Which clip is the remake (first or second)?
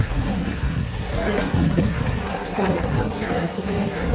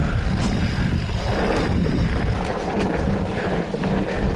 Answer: first